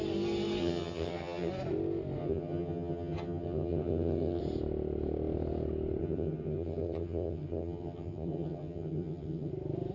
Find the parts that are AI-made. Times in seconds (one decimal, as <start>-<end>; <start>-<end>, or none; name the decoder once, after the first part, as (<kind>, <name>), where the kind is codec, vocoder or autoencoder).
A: 0.6-1.5 (vocoder, HiFi-GAN); 2.2-4.4; 6.0-9.5